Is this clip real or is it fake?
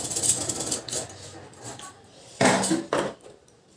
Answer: real